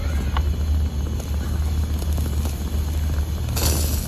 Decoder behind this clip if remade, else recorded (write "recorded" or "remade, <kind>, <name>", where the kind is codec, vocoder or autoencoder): recorded